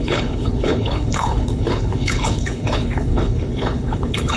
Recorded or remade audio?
remade